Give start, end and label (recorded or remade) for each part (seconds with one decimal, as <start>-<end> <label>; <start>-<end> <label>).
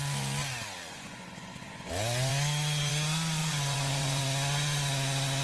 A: 0.0-0.8 recorded; 0.8-1.9 remade; 1.9-3.4 recorded; 3.4-4.2 remade; 4.2-5.4 recorded